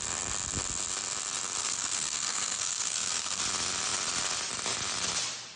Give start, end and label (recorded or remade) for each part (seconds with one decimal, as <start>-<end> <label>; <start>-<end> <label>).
0.0-1.6 recorded; 1.6-3.4 remade; 3.4-5.6 recorded